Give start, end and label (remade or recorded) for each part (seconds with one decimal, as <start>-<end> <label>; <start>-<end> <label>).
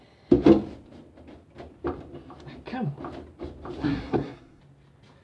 0.0-3.8 recorded; 3.8-4.6 remade; 4.6-5.2 recorded